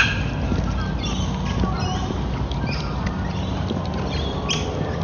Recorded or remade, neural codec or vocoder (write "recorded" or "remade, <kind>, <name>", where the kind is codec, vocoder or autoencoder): recorded